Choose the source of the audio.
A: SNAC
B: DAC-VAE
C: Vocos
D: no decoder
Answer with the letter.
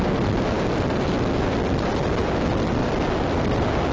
D